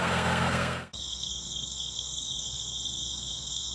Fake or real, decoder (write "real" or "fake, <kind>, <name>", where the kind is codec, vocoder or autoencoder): fake, codec, SNAC